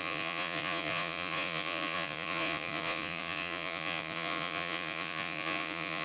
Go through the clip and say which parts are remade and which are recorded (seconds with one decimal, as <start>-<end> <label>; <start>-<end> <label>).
0.0-6.0 remade